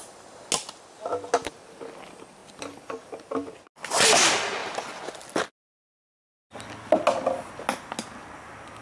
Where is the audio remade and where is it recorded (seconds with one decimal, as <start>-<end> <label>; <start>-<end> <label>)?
0.0-8.8 recorded